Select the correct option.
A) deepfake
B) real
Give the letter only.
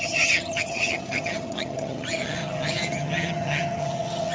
A